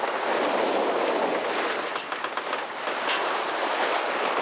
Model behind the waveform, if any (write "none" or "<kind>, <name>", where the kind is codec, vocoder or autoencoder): none